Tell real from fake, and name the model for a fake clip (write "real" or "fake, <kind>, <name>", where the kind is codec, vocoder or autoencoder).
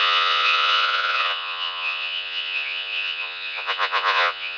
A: fake, vocoder, Vocos